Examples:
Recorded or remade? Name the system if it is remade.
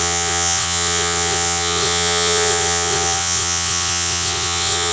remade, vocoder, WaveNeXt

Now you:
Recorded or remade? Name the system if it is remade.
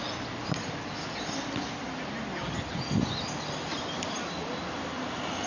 recorded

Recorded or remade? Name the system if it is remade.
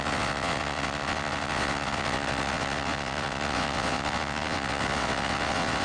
remade, vocoder, WaveNeXt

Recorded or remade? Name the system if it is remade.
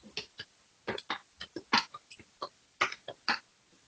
recorded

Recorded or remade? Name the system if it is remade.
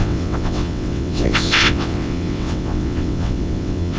remade, vocoder, WaveNeXt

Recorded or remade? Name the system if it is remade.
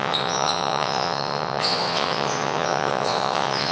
remade, vocoder, WaveNeXt